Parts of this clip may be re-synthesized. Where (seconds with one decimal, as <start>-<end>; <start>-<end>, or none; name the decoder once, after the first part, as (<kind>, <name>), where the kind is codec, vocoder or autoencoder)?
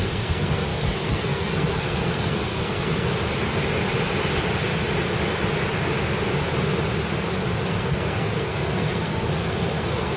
0.0-3.1 (codec, SNAC); 7.6-10.2